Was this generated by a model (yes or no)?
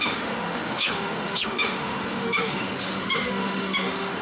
yes